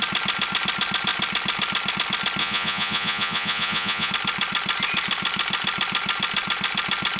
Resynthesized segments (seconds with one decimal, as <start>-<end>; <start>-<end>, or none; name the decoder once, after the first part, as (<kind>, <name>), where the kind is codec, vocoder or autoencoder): 2.4-4.1 (vocoder, Vocos)

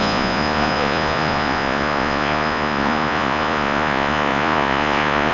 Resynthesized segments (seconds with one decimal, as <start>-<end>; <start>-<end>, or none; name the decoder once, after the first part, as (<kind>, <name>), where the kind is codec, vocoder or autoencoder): 0.0-5.3 (vocoder, Vocos)

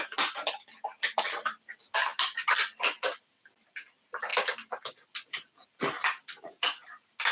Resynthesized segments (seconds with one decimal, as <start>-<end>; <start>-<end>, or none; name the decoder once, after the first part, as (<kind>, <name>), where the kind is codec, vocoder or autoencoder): none

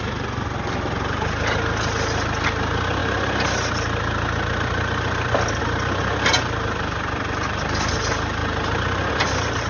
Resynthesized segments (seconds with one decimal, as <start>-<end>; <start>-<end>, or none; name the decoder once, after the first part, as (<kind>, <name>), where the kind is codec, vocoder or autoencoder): none